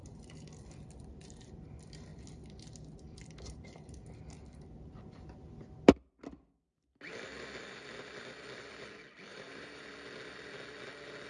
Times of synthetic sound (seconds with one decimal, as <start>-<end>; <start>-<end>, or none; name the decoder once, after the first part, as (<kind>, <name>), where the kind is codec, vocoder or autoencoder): 0.0-0.5 (vocoder, BigVGAN v2); 9.3-9.8